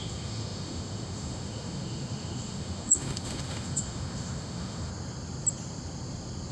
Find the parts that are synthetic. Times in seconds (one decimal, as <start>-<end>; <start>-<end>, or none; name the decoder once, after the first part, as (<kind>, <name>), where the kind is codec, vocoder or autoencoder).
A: 0.0-4.9 (autoencoder, DAC-VAE)